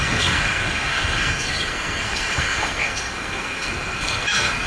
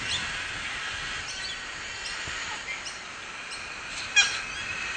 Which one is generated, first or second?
first